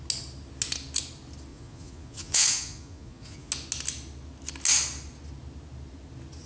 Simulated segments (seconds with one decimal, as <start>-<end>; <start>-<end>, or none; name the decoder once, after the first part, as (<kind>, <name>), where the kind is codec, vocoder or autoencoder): 1.5-3.5 (vocoder, Vocos)